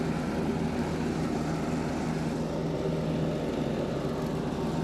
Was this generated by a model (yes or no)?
no